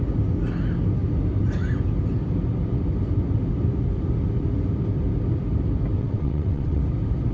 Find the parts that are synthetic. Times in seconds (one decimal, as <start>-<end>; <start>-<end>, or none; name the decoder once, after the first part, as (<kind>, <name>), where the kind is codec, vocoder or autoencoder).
6.0-6.8 (vocoder, WaveNeXt)